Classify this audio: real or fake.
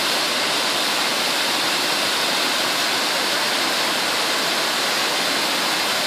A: real